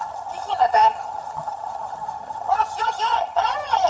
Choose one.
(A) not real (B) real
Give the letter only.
A